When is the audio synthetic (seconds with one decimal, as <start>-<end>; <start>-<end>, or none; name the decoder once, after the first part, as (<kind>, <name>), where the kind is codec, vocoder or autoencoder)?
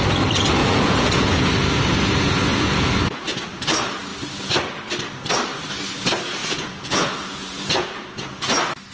0.6-1.5 (vocoder, Vocos); 2.5-3.5; 6.4-8.4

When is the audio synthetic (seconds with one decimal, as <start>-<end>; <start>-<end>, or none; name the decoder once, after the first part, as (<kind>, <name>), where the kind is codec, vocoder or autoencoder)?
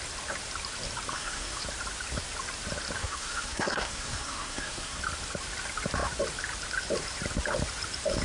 1.1-1.6 (codec, SNAC); 3.0-5.0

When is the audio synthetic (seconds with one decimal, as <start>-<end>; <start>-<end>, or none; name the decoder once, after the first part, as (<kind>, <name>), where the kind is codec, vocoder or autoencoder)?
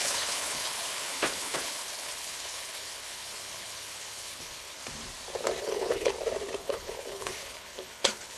0.0-4.8 (codec, HILCodec); 5.6-6.1; 6.6-8.4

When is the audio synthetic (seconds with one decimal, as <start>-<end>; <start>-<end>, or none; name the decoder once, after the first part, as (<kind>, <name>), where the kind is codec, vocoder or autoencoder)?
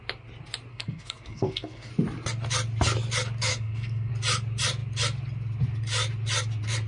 0.7-1.9 (codec, SNAC); 3.5-4.1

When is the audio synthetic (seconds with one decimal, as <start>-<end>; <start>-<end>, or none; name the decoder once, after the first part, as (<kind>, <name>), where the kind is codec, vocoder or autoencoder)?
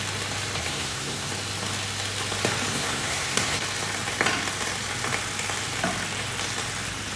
0.6-1.3 (codec, SNAC); 2.7-3.6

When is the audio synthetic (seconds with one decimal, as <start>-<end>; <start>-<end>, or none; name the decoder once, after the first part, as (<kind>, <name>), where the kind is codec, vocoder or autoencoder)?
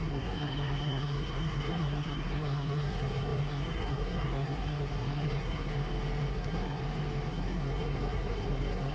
0.0-5.7 (codec, SNAC); 6.3-6.8; 7.3-8.9